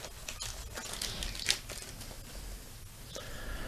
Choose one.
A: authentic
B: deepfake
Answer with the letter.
A